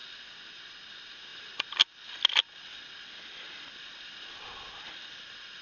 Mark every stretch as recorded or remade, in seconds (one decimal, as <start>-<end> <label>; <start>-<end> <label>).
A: 0.0-5.6 recorded